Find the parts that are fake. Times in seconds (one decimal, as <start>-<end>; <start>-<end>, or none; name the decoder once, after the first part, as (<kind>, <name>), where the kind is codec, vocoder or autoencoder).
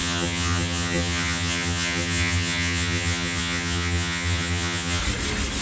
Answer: 0.0-5.0 (vocoder, HiFi-GAN)